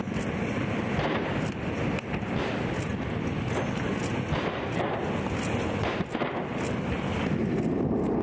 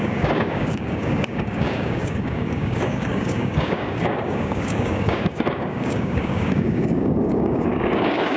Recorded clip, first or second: first